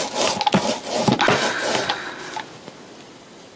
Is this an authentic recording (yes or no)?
yes